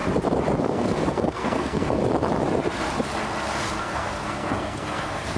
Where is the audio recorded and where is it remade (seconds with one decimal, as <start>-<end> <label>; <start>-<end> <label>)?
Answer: 0.0-0.6 recorded; 0.6-2.0 remade; 2.0-3.8 recorded; 3.8-5.4 remade